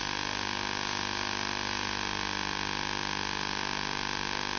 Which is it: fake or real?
real